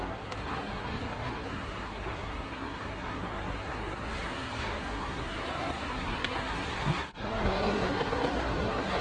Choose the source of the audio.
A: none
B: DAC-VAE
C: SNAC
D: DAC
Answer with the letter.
C